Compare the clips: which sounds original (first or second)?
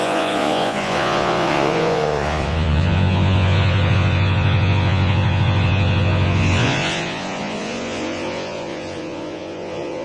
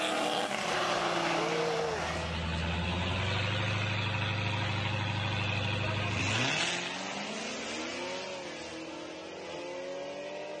second